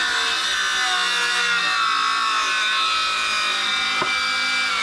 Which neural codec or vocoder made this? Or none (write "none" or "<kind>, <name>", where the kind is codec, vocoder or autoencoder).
none